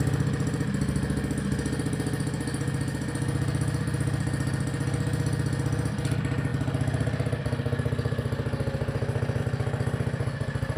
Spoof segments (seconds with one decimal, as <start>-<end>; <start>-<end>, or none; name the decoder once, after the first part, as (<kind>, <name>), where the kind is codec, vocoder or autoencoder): none